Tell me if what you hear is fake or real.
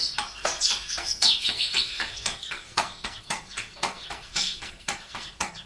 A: fake